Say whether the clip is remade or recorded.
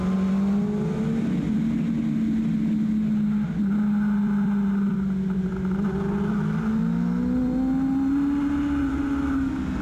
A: recorded